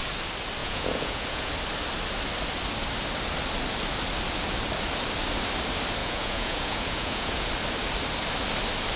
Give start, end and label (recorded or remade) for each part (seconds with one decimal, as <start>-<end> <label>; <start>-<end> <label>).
0.0-0.6 recorded; 0.6-1.5 remade; 1.5-6.0 recorded; 6.0-7.5 remade; 7.5-9.0 recorded